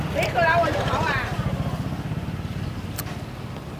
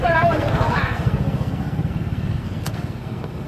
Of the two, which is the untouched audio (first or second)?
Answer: first